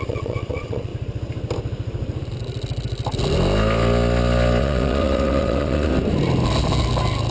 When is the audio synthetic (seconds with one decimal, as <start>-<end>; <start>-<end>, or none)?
0.0-0.9; 4.6-5.9